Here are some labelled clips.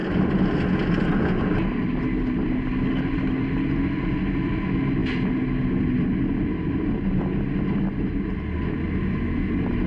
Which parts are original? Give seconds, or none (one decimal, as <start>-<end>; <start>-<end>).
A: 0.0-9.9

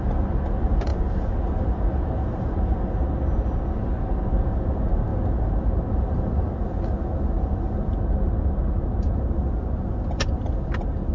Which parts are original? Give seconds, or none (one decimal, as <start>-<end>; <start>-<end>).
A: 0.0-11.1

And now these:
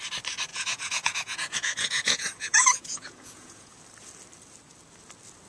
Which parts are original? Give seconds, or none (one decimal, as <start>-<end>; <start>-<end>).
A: 0.0-0.5; 3.8-5.5

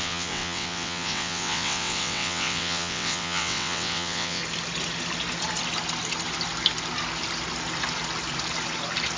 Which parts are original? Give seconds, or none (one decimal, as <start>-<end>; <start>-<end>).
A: 4.4-9.2

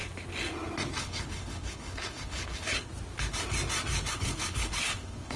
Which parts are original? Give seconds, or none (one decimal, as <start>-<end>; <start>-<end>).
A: 0.0-1.0; 2.9-4.1

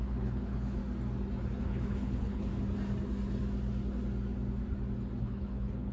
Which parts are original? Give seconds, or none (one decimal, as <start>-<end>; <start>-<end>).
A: 0.8-1.6; 2.5-5.2